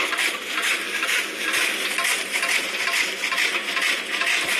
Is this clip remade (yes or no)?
no